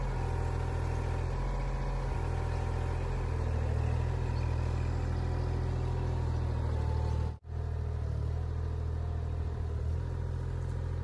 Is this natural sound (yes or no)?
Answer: yes